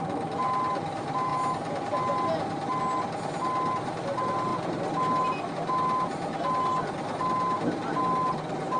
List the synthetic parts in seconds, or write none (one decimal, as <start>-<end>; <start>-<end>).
none